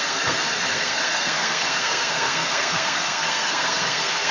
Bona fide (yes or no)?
no